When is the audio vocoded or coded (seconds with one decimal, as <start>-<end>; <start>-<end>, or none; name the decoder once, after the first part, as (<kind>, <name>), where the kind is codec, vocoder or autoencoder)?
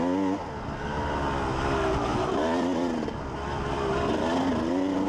2.1-3.2 (vocoder, BigVGAN v2)